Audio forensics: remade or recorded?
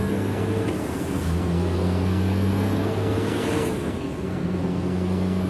remade